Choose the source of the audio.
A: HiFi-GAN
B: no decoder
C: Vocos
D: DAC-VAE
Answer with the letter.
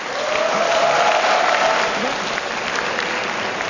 B